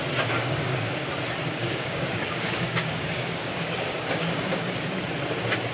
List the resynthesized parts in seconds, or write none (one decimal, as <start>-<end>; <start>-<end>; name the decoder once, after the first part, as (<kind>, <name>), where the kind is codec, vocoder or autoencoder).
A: 0.4-1.1 (codec, DAC); 1.6-5.0